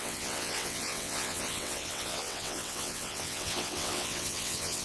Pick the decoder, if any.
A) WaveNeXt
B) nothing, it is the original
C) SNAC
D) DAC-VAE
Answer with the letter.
A